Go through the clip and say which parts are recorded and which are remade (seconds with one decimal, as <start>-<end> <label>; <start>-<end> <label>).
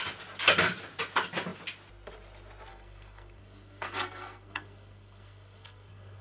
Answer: 0.0-2.7 recorded; 2.7-6.2 remade